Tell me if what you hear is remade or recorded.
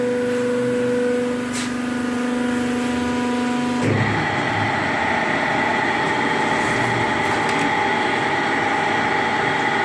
recorded